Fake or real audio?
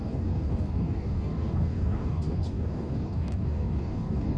fake